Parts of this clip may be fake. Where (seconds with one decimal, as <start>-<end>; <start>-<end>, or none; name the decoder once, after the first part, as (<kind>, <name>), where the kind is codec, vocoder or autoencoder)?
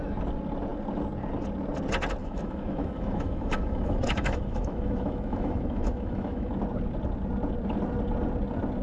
2.2-6.5 (autoencoder, DAC-VAE)